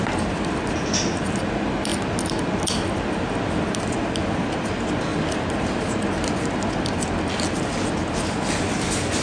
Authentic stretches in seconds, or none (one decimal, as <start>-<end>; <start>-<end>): 0.0-9.2